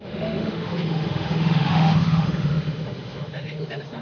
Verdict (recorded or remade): remade